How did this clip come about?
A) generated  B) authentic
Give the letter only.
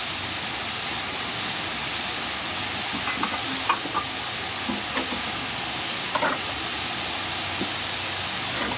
B